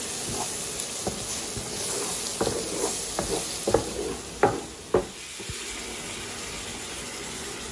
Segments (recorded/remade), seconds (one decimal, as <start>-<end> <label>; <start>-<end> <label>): 0.0-6.7 recorded; 6.7-7.7 remade

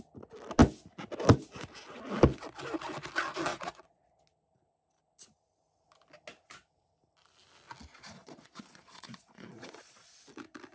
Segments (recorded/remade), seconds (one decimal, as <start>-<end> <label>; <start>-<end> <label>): 0.0-3.5 recorded; 3.5-4.2 remade; 4.2-7.9 recorded; 7.9-10.1 remade; 10.1-10.7 recorded

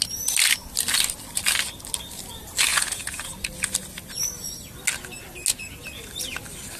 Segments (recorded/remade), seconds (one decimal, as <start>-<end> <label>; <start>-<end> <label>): 0.0-2.7 recorded; 2.7-3.3 remade; 3.3-6.8 recorded